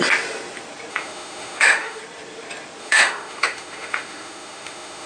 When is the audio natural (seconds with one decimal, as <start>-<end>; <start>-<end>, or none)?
0.0-0.9; 2.0-2.8